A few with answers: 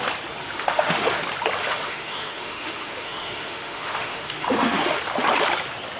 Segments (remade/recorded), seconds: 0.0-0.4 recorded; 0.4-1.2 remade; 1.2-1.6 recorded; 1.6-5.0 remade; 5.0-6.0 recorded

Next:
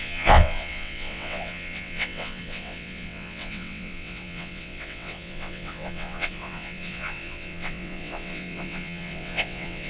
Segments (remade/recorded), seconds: 0.0-9.9 remade

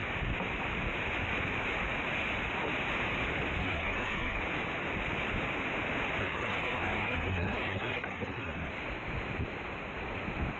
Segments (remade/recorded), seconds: 0.0-3.6 recorded; 3.6-4.4 remade; 4.4-6.2 recorded; 6.2-8.7 remade; 8.7-10.6 recorded

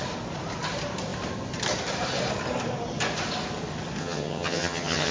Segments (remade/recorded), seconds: 0.0-4.0 recorded; 4.0-5.1 remade